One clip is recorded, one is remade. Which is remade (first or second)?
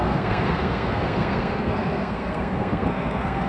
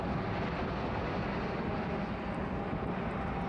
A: first